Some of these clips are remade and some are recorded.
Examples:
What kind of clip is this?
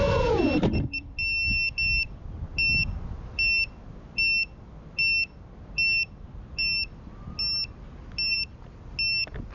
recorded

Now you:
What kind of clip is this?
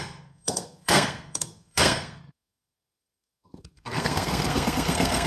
remade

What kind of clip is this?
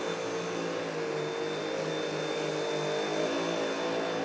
recorded